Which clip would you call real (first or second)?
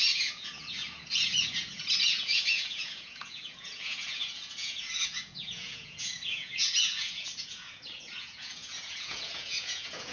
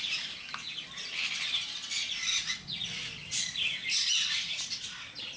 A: second